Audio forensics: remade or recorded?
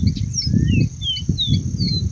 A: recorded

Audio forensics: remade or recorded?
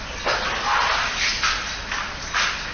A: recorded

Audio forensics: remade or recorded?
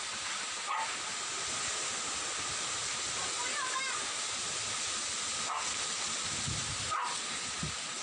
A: recorded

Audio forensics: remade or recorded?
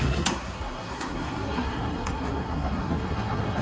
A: remade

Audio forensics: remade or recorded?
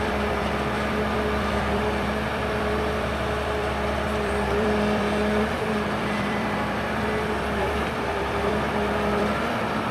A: remade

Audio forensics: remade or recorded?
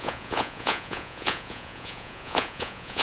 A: remade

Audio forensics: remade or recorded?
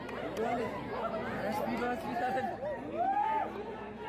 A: recorded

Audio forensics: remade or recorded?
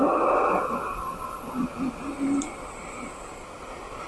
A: recorded